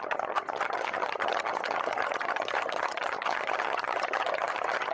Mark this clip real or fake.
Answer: fake